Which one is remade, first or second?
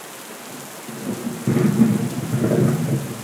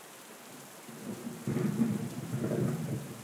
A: second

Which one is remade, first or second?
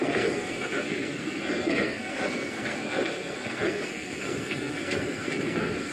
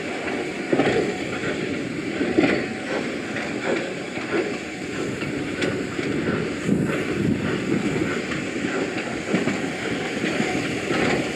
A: first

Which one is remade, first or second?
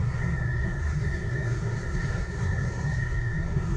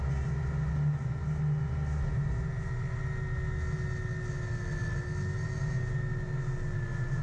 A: first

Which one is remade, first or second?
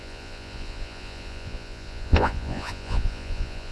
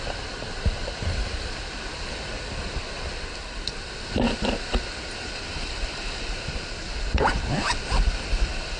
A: first